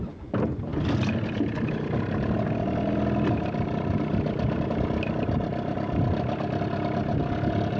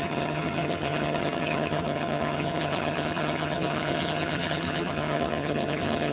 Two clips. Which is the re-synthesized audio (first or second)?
second